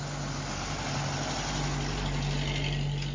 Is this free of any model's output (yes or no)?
yes